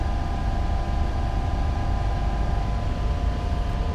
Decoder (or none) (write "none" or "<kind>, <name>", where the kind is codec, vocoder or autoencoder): none